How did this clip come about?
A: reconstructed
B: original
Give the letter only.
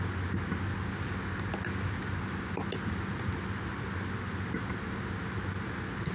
B